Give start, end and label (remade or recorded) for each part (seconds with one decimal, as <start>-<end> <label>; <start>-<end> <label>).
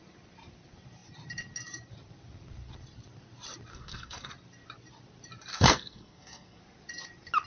0.0-3.7 recorded; 3.7-4.3 remade; 4.3-5.5 recorded; 5.5-6.6 remade; 6.6-7.5 recorded